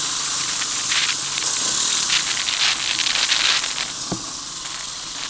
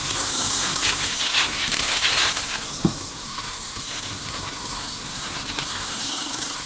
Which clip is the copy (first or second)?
second